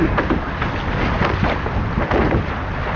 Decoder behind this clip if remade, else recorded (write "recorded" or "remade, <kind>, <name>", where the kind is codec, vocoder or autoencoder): recorded